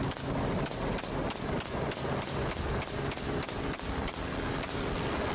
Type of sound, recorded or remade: recorded